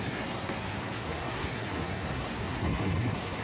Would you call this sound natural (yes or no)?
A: no